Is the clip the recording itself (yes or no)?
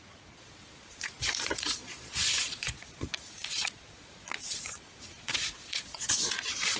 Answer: no